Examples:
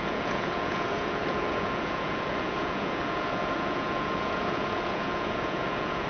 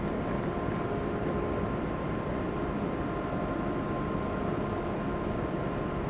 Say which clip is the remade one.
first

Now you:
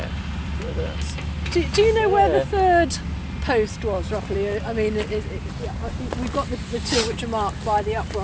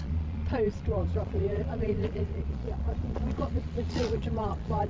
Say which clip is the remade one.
second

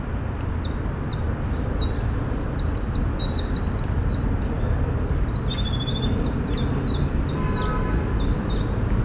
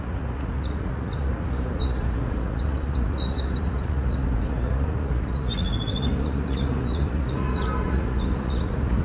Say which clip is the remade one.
second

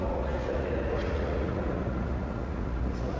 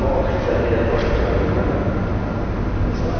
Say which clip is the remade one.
first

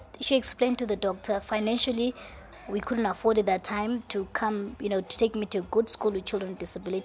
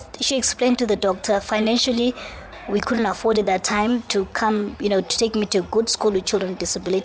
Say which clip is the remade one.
second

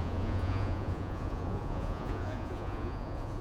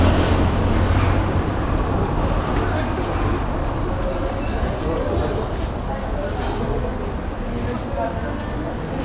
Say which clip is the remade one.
first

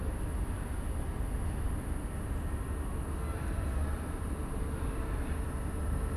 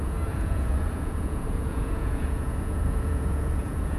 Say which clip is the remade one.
second